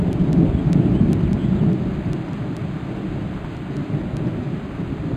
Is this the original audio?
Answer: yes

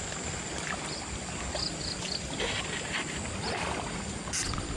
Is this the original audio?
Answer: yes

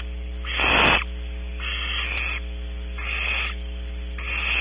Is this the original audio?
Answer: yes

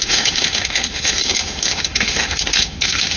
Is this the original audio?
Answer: no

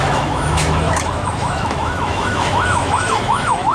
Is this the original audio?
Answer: no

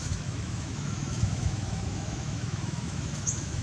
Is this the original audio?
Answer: no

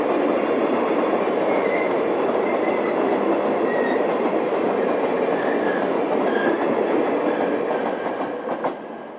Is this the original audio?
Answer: yes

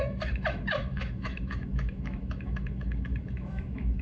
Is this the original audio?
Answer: no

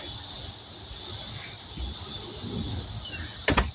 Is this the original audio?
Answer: yes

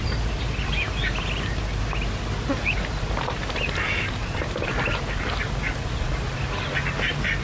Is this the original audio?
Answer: yes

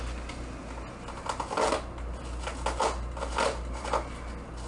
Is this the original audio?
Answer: yes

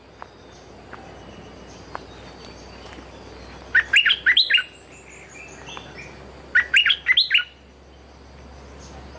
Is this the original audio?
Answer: yes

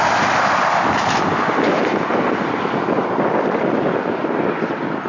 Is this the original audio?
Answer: yes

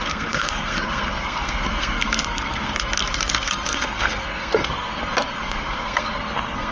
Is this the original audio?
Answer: no